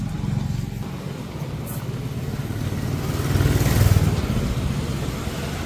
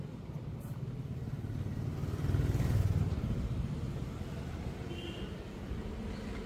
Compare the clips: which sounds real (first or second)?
first